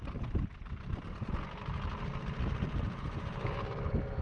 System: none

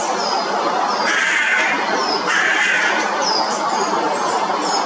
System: none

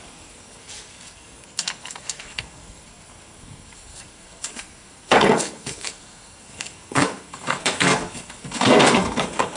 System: codec, SNAC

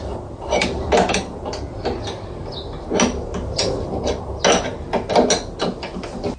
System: none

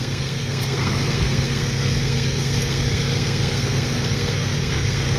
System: codec, SNAC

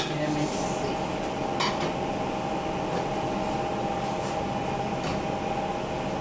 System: none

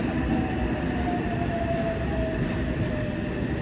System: none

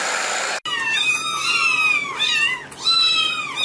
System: none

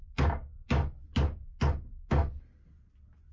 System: none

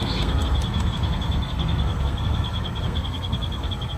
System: codec, SNAC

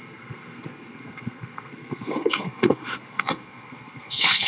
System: codec, SNAC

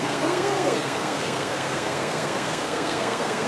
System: codec, SNAC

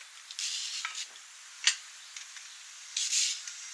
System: none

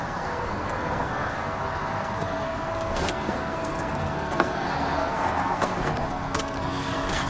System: codec, SNAC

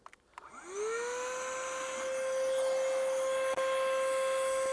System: none